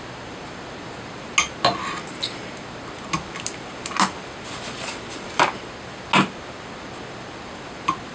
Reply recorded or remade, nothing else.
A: recorded